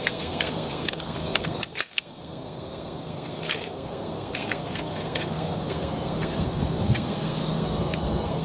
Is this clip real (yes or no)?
no